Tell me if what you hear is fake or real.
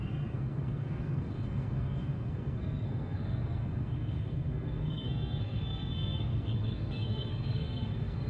fake